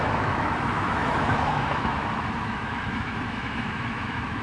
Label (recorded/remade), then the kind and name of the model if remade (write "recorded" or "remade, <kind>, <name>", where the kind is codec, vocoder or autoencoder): remade, autoencoder, DAC-VAE